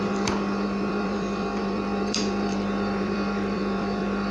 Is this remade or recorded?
remade